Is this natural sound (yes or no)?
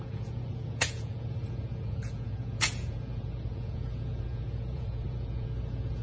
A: no